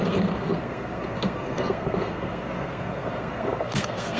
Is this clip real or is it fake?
fake